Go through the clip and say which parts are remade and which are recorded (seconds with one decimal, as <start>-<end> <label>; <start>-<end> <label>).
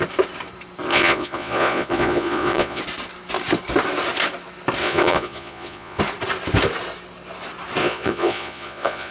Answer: 0.0-0.9 recorded; 0.9-2.8 remade; 2.8-4.8 recorded; 4.8-6.0 remade; 6.0-7.8 recorded; 7.8-9.1 remade